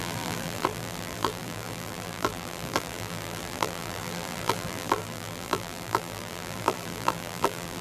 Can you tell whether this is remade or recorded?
remade